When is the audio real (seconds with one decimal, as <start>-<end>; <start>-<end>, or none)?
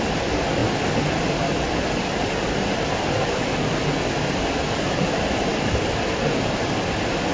0.0-7.3